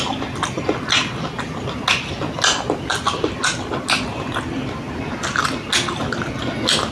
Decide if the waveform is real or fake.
real